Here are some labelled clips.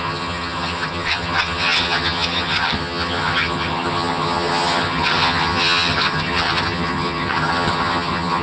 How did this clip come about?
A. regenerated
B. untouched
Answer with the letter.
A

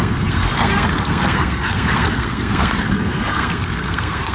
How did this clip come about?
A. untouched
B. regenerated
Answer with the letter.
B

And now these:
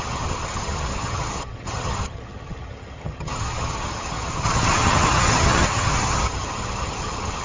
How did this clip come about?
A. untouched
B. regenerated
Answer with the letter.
B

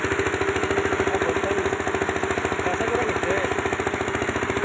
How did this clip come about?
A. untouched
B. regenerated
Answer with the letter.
A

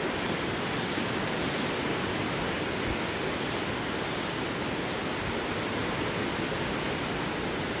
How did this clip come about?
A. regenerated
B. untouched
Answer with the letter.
B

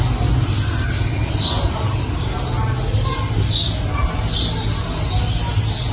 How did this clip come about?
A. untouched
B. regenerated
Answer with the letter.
A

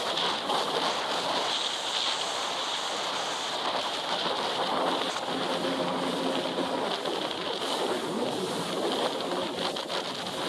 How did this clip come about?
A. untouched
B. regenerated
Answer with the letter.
A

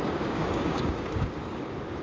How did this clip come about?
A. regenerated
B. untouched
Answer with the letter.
A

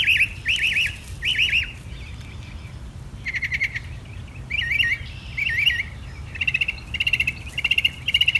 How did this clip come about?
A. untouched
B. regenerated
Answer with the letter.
A